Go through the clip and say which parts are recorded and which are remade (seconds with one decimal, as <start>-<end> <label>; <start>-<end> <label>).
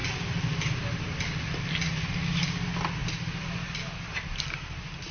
0.0-5.1 recorded